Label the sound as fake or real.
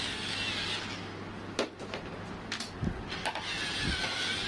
real